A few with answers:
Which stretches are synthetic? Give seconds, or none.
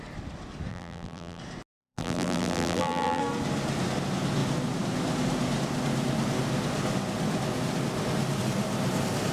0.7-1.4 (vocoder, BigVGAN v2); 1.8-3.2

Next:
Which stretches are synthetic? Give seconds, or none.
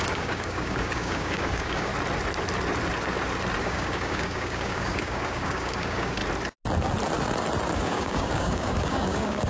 0.0-1.9 (codec, DAC); 3.6-6.2; 7.7-9.5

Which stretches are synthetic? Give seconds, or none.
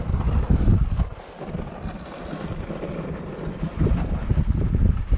none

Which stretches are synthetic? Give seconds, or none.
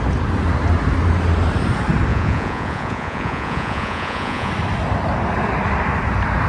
2.1-4.5 (vocoder, Vocos)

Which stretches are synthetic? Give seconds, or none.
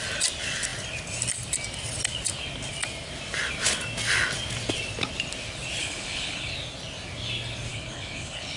5.8-6.5 (codec, HILCodec); 7.7-8.6